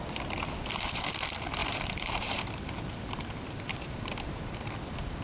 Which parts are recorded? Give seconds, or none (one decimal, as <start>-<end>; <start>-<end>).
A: 0.0-1.6; 3.8-5.2